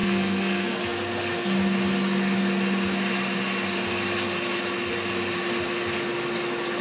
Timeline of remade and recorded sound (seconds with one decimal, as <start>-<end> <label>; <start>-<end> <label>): 0.0-0.8 remade; 0.8-6.8 recorded